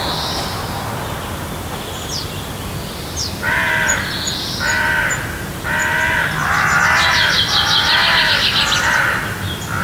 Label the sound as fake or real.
real